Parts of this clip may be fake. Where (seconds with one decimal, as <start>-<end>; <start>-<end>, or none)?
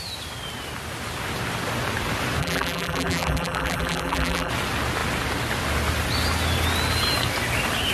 2.4-4.5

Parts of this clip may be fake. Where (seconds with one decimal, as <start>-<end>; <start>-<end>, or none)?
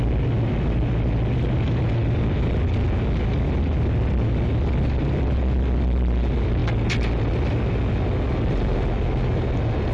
none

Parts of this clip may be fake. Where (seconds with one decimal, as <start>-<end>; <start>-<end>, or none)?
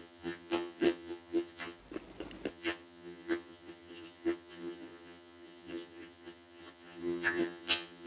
0.0-1.8; 2.5-8.1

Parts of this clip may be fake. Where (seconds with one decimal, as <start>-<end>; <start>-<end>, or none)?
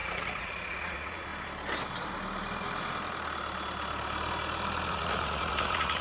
0.0-1.3; 4.9-6.0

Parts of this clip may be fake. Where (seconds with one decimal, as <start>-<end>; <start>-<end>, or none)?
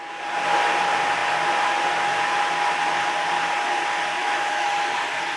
4.2-4.7